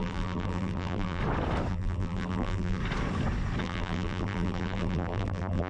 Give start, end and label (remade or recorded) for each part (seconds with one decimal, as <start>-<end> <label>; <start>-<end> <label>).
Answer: 0.0-1.2 remade; 1.2-1.7 recorded; 1.7-2.8 remade; 2.8-3.6 recorded; 3.6-5.7 remade